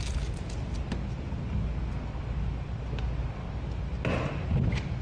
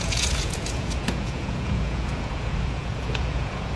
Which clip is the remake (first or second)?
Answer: second